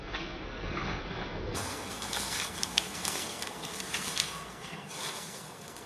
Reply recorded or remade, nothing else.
remade